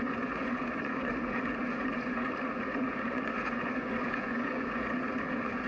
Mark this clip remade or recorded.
remade